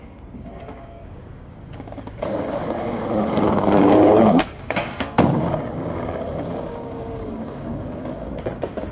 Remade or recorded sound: remade